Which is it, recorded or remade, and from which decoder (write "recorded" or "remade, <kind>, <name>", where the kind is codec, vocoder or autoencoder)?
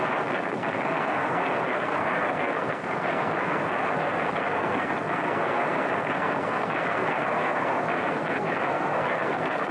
remade, codec, SNAC